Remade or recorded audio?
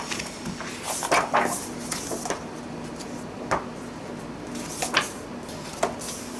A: recorded